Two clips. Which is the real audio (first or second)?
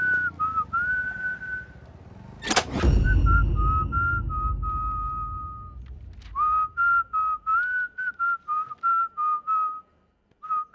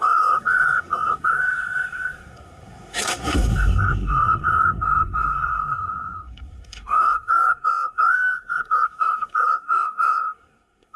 first